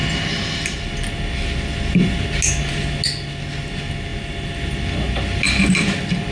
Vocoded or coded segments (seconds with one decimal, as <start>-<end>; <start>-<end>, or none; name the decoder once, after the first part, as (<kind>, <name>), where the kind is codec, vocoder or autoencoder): none